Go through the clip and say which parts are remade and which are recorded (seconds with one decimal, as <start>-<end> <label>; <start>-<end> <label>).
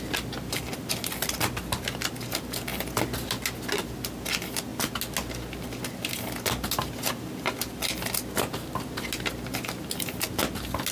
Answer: 0.0-10.9 recorded